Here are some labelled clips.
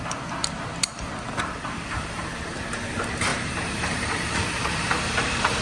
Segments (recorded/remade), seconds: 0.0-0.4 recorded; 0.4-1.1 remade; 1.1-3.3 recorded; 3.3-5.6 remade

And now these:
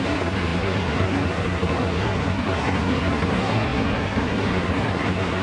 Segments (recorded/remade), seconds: 0.0-5.4 remade